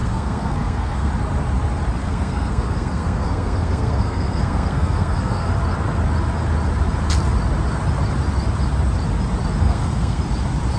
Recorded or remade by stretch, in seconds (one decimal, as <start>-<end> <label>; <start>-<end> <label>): 0.0-1.1 remade; 1.1-2.0 recorded; 2.0-5.5 remade; 5.5-9.6 recorded; 9.6-10.2 remade; 10.2-10.8 recorded